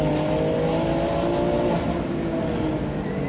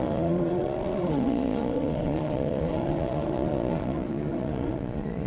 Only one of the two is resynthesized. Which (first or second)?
second